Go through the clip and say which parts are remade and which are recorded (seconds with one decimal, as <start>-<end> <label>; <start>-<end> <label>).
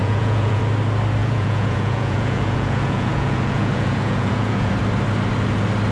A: 0.0-0.6 remade; 0.6-1.2 recorded; 1.2-4.7 remade; 4.7-5.9 recorded